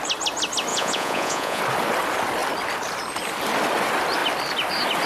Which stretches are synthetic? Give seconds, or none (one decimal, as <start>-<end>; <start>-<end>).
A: 0.7-1.6